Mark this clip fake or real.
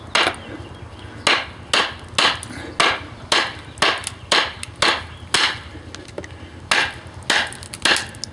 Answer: real